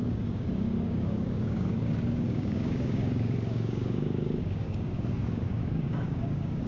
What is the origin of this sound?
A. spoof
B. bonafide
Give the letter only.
A